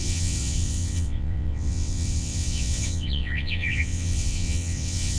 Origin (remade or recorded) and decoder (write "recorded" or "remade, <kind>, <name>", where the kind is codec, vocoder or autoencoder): remade, vocoder, WaveNeXt